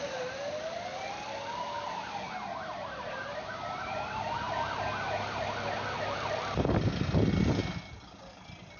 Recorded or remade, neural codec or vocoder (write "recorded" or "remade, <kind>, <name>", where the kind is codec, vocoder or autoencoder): recorded